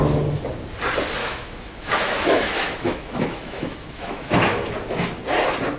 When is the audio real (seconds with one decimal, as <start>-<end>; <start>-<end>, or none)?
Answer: 0.0-1.2; 4.7-5.8